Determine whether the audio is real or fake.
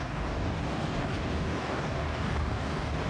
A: fake